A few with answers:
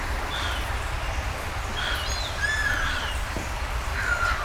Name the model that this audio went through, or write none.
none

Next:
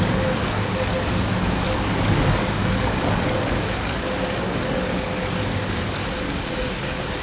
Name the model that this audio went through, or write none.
codec, DAC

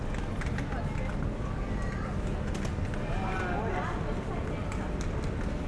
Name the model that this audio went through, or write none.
none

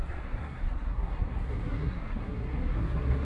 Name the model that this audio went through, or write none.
codec, SNAC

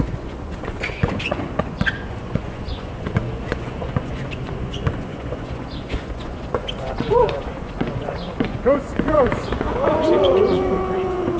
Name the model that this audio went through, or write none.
vocoder, Vocos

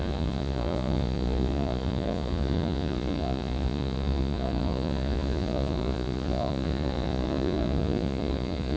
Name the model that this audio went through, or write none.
vocoder, Vocos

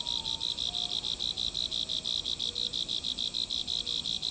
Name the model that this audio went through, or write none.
none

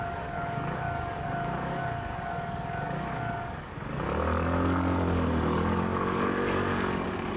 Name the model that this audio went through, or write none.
codec, DAC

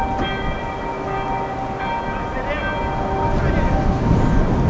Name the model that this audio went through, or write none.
none